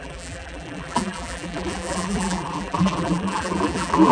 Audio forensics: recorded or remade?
remade